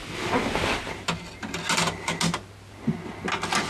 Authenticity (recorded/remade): recorded